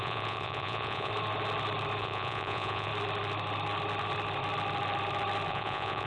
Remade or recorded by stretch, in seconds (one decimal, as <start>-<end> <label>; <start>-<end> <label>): 0.0-1.1 remade; 1.1-2.0 recorded; 2.0-2.9 remade; 2.9-5.5 recorded; 5.5-6.1 remade